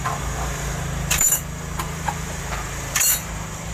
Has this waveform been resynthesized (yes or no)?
yes